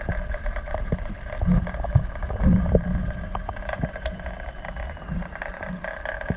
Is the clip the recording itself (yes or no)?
yes